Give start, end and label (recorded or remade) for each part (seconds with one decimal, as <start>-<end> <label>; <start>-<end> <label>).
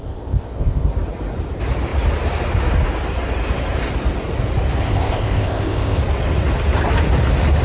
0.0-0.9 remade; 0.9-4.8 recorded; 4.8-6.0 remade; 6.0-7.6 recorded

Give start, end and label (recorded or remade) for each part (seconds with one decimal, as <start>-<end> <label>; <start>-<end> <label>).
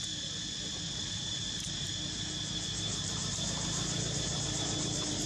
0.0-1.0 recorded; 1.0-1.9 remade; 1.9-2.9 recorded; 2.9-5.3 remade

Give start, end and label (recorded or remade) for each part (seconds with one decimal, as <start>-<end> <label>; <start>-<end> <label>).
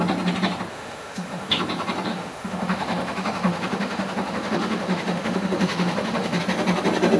0.0-0.7 recorded; 0.7-1.6 remade; 1.6-2.1 recorded; 2.1-6.4 remade; 6.4-7.2 recorded